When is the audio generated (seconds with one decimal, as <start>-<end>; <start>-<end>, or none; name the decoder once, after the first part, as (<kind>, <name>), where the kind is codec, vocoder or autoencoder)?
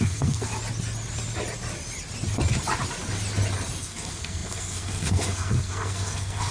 0.0-0.5 (codec, SNAC); 3.8-6.5